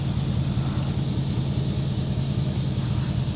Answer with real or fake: real